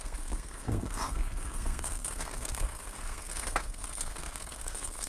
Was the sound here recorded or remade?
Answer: remade